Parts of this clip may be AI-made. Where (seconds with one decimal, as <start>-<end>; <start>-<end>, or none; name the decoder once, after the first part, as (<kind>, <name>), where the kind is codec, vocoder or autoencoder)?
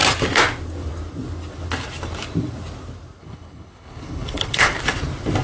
3.2-4.8 (codec, HILCodec)